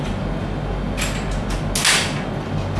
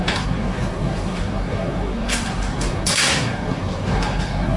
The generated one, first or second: second